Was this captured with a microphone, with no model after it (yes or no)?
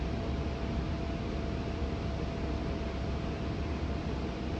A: yes